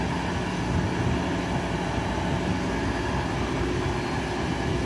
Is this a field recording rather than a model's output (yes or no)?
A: yes